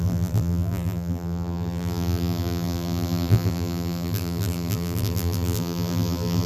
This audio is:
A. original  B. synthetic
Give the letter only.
B